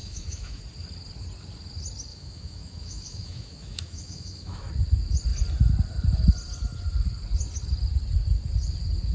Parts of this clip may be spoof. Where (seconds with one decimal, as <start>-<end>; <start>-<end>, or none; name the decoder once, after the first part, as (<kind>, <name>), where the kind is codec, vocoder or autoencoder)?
0.0-0.6 (autoencoder, DAC-VAE); 2.1-4.7